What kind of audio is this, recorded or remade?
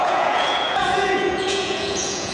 remade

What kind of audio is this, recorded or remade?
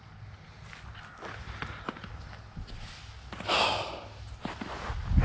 recorded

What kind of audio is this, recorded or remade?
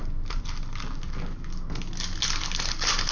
recorded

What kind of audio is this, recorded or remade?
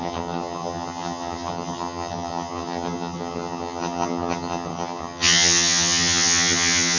remade